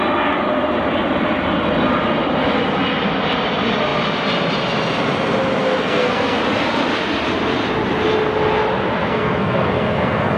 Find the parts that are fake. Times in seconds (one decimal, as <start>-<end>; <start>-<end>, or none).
5.6-6.4; 9.0-10.4